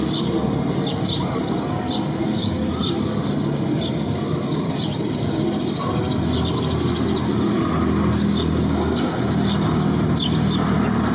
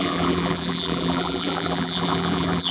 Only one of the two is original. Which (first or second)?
first